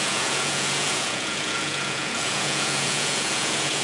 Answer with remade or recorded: remade